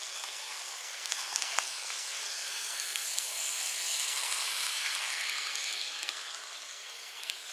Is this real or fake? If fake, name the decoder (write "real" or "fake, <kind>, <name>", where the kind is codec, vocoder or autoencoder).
fake, codec, SNAC